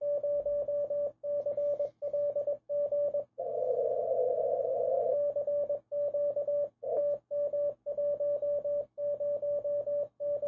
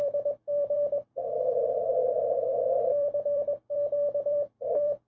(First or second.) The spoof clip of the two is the second